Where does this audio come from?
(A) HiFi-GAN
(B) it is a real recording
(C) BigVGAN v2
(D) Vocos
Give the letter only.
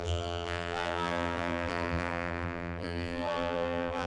C